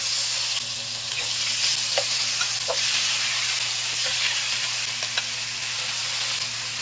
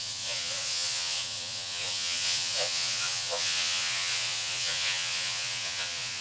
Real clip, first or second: first